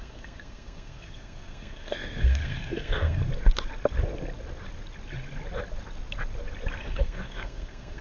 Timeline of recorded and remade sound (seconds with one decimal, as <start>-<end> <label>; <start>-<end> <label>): 0.0-3.2 remade; 3.2-6.8 recorded; 6.8-8.0 remade